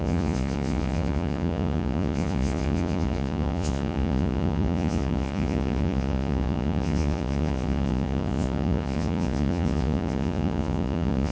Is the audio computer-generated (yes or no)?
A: yes